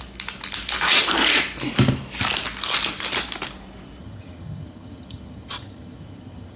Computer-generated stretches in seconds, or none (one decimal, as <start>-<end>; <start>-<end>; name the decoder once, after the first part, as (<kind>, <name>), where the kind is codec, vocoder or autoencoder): 4.0-6.6 (vocoder, HiFi-GAN)